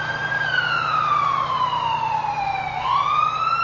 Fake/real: real